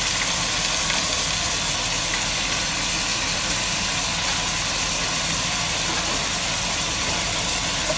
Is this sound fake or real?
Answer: real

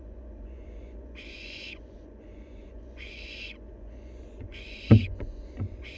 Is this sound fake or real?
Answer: fake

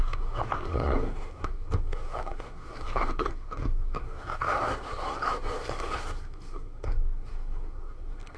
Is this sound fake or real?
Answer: fake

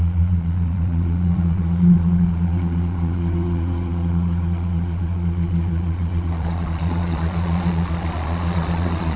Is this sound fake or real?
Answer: fake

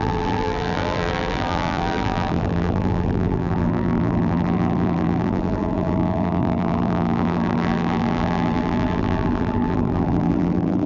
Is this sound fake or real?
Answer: fake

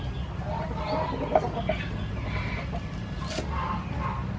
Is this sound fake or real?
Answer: real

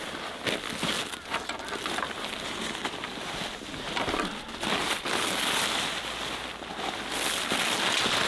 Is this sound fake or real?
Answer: real